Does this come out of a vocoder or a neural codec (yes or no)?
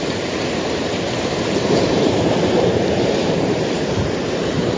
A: yes